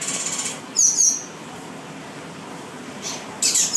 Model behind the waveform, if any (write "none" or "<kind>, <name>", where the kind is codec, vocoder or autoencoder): none